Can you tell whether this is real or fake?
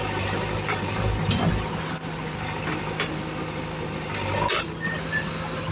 real